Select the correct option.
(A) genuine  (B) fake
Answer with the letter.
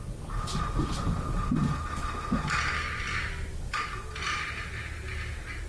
A